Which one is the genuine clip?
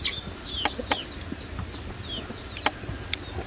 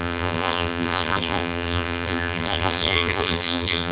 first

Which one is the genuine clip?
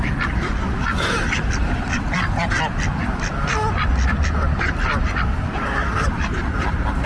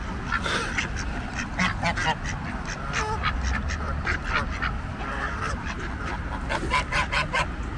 second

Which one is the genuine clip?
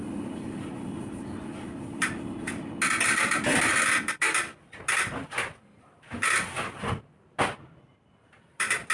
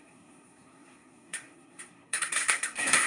first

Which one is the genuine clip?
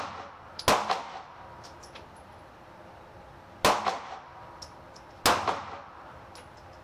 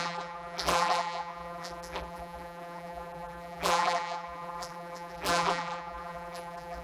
first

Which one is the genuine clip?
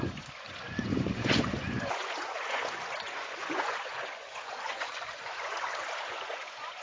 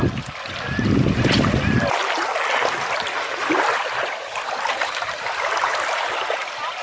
second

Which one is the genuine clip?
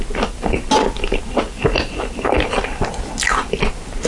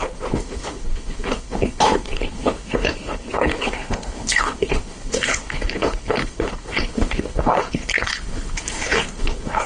first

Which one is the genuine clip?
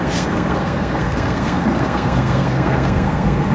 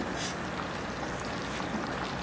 second